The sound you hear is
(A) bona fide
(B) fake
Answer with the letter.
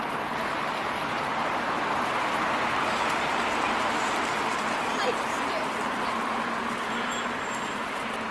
B